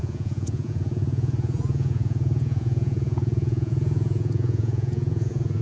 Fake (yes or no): yes